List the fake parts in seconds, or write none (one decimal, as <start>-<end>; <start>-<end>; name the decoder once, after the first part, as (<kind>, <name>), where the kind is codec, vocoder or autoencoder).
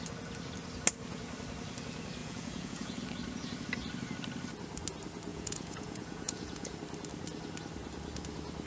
2.2-3.0 (vocoder, Vocos); 5.3-6.8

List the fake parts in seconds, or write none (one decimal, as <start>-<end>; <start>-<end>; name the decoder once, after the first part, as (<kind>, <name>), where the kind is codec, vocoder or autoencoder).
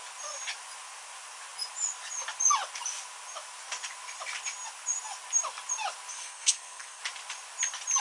6.1-7.0 (codec, SNAC)